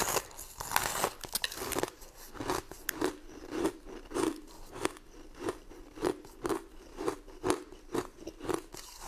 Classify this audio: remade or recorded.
recorded